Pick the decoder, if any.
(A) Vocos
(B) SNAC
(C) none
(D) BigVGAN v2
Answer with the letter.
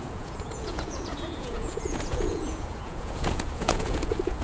A